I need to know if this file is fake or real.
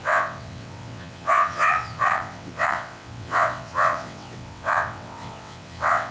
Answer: fake